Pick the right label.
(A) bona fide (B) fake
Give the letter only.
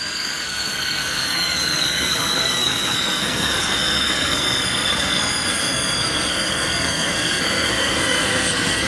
B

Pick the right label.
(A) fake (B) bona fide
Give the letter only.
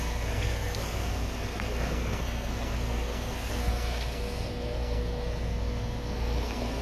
A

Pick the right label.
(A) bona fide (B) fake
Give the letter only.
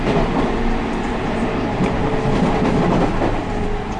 A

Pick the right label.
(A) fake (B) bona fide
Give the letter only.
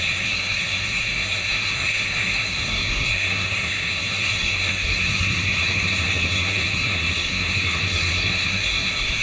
A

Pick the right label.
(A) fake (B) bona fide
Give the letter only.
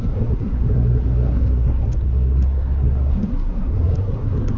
A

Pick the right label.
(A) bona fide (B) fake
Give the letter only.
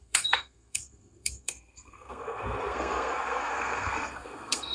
B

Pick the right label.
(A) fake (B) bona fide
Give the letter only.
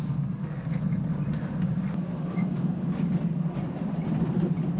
B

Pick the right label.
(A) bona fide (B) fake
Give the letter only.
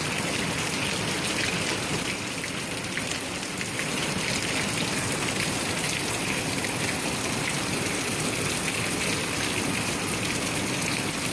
A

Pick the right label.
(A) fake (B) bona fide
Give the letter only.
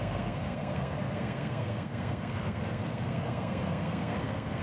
A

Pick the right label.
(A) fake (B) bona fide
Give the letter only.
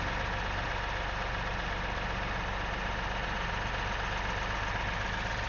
B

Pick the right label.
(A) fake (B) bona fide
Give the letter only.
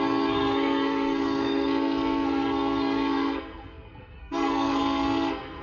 A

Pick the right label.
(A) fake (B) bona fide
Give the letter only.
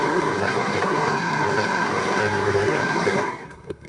A